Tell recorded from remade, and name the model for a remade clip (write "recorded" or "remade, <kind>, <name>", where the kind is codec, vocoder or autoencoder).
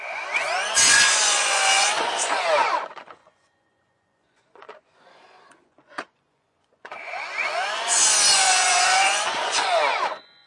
remade, vocoder, Vocos